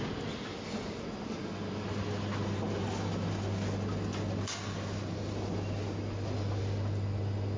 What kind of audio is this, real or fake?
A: real